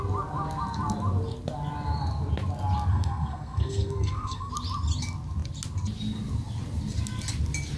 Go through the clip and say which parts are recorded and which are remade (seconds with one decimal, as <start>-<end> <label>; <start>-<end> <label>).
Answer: 0.0-2.9 recorded; 2.9-4.5 remade; 4.5-7.8 recorded